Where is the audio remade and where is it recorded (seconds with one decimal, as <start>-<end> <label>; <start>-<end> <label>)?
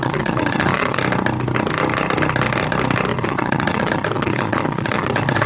0.0-1.0 remade; 1.0-3.1 recorded; 3.1-5.5 remade